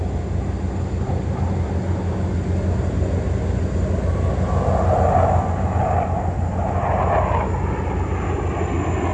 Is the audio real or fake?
real